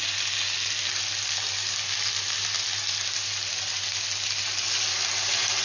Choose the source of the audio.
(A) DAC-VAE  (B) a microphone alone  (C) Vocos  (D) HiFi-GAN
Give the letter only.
B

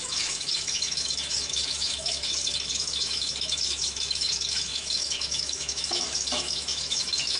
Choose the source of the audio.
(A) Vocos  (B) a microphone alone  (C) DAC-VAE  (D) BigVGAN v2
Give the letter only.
C